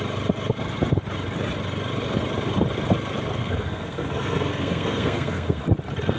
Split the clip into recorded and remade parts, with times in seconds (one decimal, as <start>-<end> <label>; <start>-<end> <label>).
0.0-3.4 recorded; 3.4-5.6 remade; 5.6-6.2 recorded